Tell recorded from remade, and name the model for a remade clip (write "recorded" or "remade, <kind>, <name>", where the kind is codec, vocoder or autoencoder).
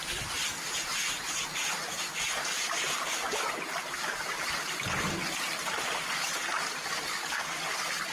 recorded